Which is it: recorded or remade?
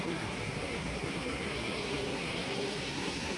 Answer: remade